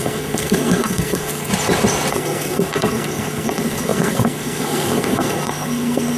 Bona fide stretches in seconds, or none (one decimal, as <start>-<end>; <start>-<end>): 1.5-2.1